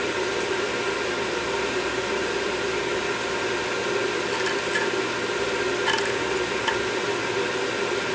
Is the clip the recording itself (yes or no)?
yes